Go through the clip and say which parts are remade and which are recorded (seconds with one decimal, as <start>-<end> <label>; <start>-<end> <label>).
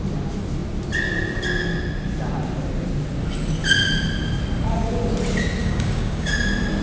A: 0.0-5.6 recorded; 5.6-6.3 remade; 6.3-6.8 recorded